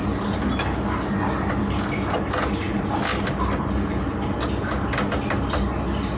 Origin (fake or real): real